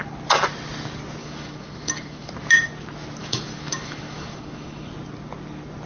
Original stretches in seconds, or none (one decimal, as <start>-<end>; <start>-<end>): 0.0-1.2; 2.3-3.2; 4.9-5.9